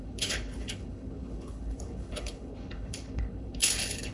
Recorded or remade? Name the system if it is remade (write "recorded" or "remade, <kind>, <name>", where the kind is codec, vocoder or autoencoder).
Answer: remade, codec, HILCodec